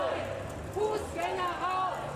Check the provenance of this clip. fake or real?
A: real